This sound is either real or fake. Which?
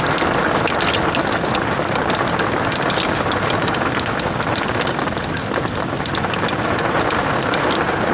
real